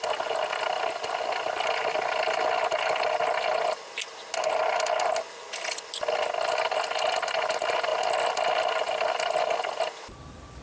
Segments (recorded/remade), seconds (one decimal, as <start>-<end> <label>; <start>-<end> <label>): 0.0-10.6 recorded